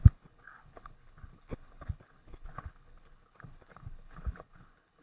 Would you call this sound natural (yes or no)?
no